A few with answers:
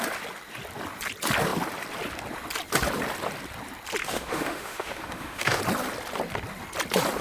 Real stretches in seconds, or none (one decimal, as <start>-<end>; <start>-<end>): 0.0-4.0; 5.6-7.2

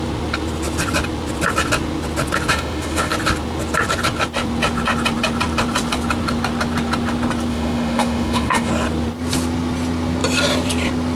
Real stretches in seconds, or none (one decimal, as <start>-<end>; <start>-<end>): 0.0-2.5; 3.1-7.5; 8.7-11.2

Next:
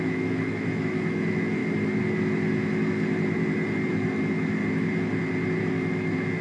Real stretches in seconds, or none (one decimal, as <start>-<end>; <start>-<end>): 1.6-3.9; 4.6-5.6

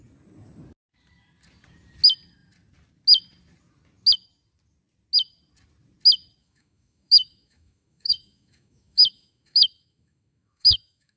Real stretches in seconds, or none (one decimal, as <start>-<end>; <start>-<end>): 0.0-6.4